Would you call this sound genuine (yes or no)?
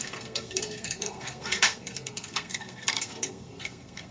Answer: no